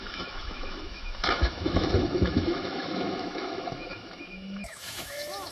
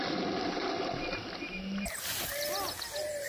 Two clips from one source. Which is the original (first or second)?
second